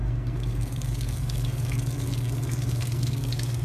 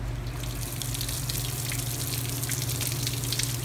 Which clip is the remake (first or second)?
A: first